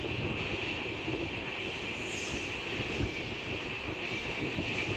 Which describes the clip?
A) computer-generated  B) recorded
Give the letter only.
B